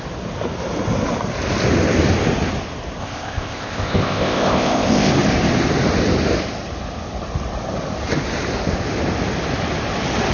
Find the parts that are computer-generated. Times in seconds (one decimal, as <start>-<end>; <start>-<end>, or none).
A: 3.0-5.1